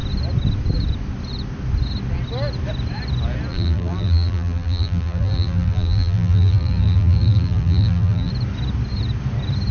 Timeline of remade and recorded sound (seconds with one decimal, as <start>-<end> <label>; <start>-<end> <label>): 0.0-3.5 recorded; 3.5-8.3 remade; 8.3-9.7 recorded